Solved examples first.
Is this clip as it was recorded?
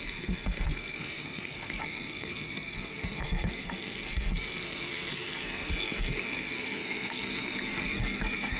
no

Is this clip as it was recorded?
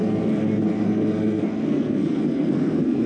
no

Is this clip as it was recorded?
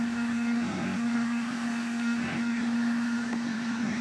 no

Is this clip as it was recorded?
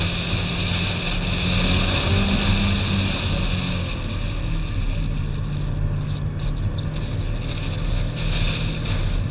yes